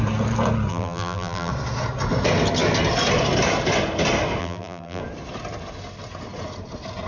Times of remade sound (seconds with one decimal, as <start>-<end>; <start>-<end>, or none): 0.7-1.5; 4.4-5.0